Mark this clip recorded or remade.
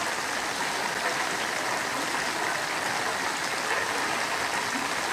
recorded